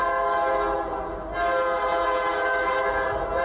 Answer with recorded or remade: recorded